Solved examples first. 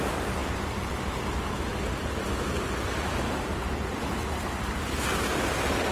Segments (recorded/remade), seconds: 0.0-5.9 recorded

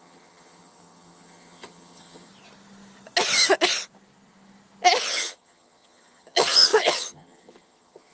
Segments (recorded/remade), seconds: 0.0-2.3 remade; 2.3-5.1 recorded; 5.1-8.1 remade

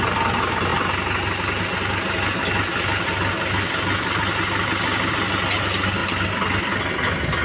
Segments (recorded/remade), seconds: 0.0-7.4 recorded

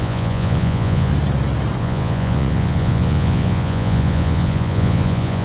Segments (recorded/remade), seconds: 0.0-1.1 remade; 1.1-1.8 recorded; 1.8-5.4 remade

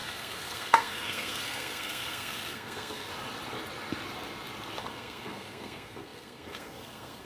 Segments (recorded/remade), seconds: 0.0-3.1 remade; 3.1-4.8 recorded; 4.8-7.2 remade

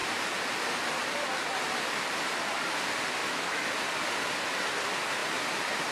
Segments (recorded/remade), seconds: 0.0-3.2 recorded; 3.2-3.7 remade; 3.7-5.9 recorded